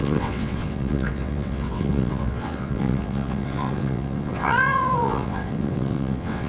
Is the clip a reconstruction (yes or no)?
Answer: yes